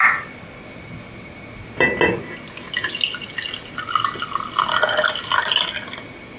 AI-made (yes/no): no